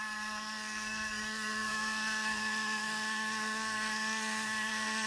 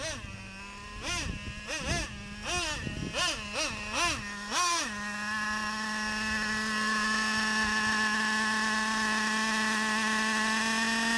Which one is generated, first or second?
first